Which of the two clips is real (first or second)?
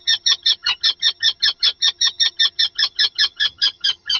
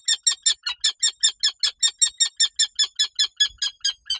second